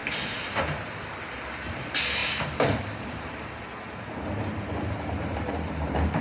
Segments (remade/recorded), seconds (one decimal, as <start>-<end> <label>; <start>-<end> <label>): 0.0-0.6 remade; 0.6-2.2 recorded; 2.2-6.2 remade